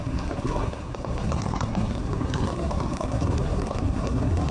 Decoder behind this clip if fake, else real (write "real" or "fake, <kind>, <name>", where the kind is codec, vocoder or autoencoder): fake, codec, SNAC